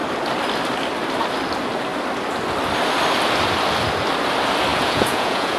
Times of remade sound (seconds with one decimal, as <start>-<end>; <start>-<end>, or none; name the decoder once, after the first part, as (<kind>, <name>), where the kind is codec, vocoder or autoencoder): 4.7-5.6 (vocoder, Vocos)